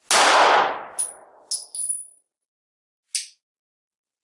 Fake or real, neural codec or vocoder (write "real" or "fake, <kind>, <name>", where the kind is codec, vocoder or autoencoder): real